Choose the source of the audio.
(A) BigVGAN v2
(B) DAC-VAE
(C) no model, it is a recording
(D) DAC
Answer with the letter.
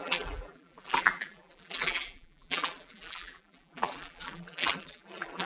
A